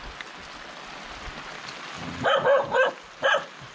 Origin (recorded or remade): recorded